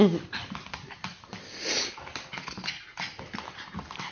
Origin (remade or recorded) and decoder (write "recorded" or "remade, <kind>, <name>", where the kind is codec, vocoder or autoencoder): recorded